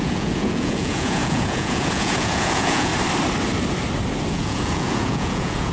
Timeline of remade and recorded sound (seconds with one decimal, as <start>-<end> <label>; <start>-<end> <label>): 0.0-2.9 remade; 2.9-4.3 recorded; 4.3-5.7 remade